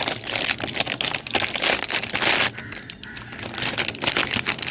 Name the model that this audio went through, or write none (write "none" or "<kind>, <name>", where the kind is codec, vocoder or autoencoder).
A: none